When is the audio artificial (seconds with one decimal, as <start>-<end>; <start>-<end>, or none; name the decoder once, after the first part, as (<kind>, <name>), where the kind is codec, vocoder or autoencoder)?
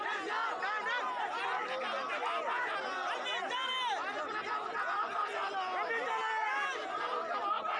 none